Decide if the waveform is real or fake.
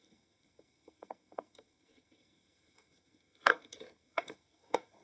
fake